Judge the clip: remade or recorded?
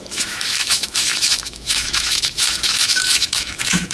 remade